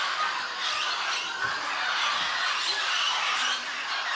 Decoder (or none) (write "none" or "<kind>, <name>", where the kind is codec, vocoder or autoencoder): none